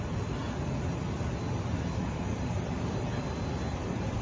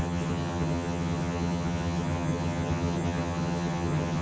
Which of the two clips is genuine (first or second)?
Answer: first